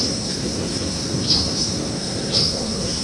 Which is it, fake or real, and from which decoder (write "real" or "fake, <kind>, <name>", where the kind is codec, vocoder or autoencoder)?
fake, codec, SNAC